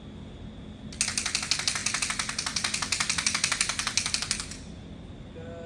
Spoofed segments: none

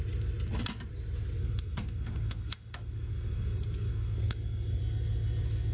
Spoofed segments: 1.4-4.8 (codec, SNAC)

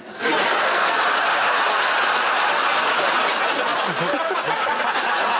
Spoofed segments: 0.5-1.0 (codec, SNAC)

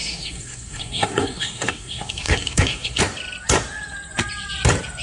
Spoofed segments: 0.0-3.0 (codec, SNAC)

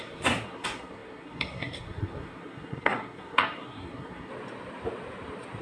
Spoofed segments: 0.0-4.3 (codec, SNAC)

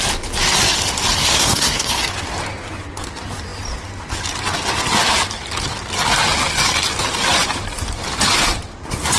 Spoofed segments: 1.2-1.9 (codec, SNAC)

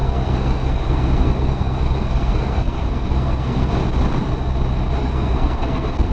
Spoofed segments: 0.0-3.7 (codec, SNAC); 5.0-6.1

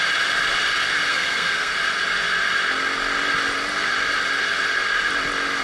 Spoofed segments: 1.1-1.7 (codec, SNAC)